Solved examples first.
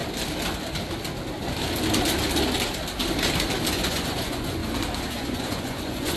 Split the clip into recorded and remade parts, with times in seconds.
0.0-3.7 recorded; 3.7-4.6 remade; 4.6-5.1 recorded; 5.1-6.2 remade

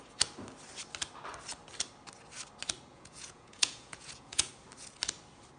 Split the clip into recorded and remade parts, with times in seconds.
0.0-2.9 recorded; 2.9-4.5 remade; 4.5-5.6 recorded

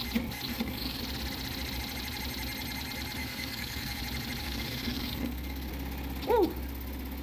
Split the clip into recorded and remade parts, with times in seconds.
0.0-0.5 recorded; 0.5-1.0 remade; 1.0-3.2 recorded; 3.2-4.0 remade; 4.0-4.4 recorded; 4.4-5.7 remade; 5.7-7.2 recorded

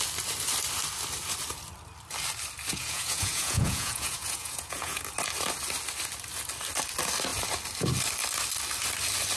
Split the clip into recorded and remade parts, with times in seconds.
0.0-2.7 recorded; 2.7-5.0 remade; 5.0-9.4 recorded

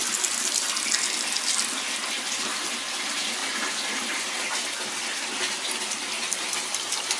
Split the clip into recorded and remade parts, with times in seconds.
0.0-7.2 recorded